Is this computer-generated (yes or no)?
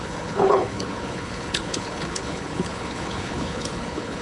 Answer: yes